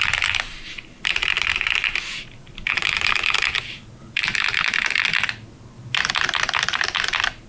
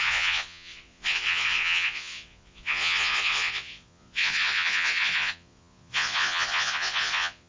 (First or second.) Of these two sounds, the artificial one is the second